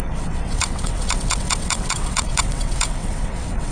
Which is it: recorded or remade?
remade